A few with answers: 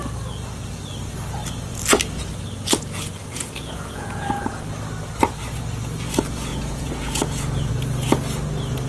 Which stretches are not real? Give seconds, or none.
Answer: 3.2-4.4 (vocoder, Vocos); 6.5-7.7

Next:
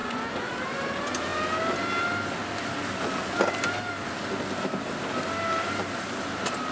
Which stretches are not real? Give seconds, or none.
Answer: 0.0-0.5 (vocoder, Vocos)